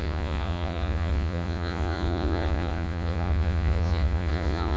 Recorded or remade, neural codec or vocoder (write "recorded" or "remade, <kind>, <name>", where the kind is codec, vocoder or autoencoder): remade, vocoder, Vocos